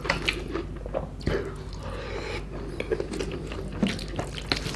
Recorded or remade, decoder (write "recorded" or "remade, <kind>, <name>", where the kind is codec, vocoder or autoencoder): recorded